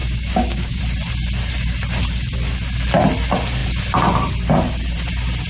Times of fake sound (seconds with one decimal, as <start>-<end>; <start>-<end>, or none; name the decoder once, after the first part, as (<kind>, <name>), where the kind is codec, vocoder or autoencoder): 0.0-0.8 (codec, DAC)